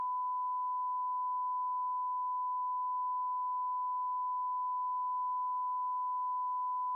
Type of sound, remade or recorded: remade